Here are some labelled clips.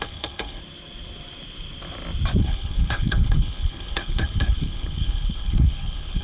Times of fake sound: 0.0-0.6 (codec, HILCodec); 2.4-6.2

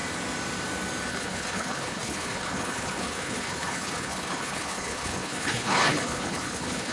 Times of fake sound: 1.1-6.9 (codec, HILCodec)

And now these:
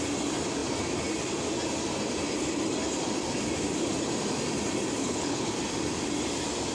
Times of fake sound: 5.0-5.5 (codec, HILCodec)

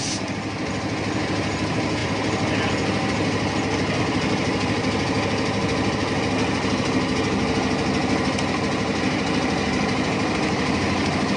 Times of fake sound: none

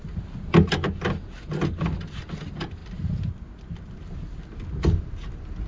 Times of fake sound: none